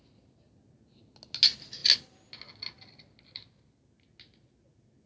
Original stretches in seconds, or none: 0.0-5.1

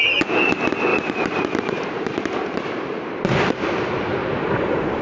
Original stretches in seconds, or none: 0.0-0.9; 3.2-4.2

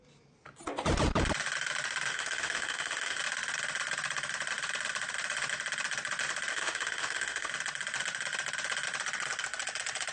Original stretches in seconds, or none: 0.0-2.1; 3.2-6.5; 7.5-10.1

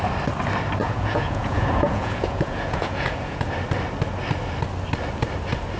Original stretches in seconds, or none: 0.0-0.8; 3.5-5.8

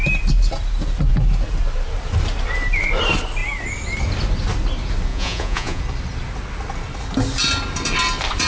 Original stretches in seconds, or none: 0.0-5.1; 5.8-8.5

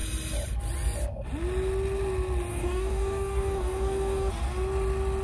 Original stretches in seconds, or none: 0.0-2.5; 4.3-5.2

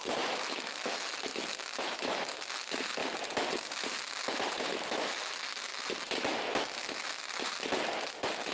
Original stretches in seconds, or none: 3.0-4.3; 5.7-8.1

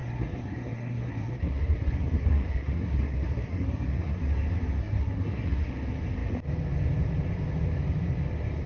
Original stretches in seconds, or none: 4.2-4.8; 5.7-8.7